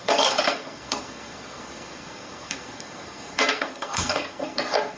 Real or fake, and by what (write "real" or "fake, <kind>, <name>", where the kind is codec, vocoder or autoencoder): fake, codec, SNAC